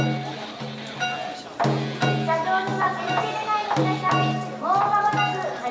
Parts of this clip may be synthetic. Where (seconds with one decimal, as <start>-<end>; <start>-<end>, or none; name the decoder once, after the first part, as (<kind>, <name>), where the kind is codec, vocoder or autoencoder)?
none